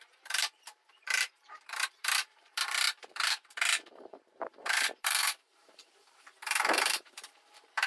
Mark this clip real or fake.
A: fake